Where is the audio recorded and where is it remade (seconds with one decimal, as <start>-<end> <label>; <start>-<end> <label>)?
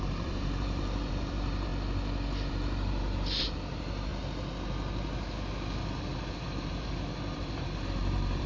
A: 0.0-1.7 remade; 1.7-2.5 recorded; 2.5-4.1 remade; 4.1-6.3 recorded; 6.3-8.5 remade